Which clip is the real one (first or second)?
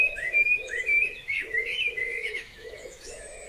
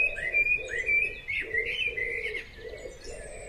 second